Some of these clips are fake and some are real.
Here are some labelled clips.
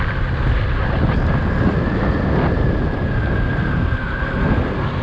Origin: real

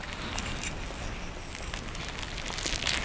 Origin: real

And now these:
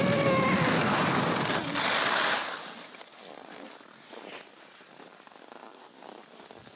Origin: real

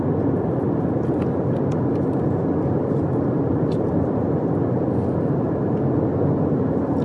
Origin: real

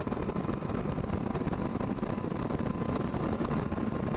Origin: fake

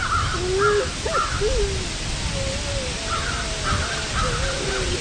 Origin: real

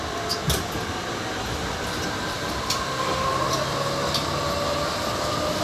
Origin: real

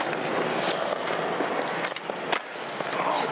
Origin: real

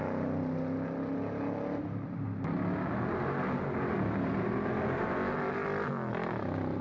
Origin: real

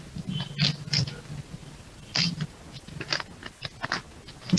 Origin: real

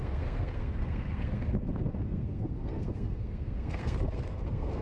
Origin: fake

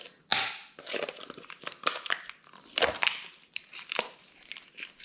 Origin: real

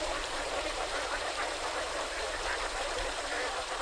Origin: fake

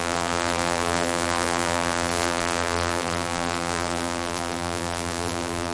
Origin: fake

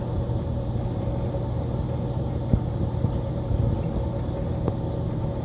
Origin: real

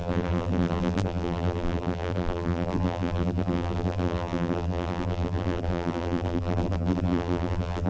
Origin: fake